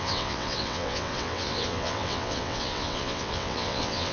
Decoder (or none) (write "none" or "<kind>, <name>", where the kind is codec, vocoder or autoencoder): vocoder, WaveNeXt